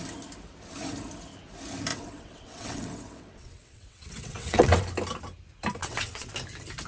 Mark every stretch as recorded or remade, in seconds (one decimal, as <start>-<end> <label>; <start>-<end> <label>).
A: 0.0-1.9 recorded; 1.9-4.8 remade; 4.8-5.8 recorded; 5.8-6.3 remade; 6.3-6.9 recorded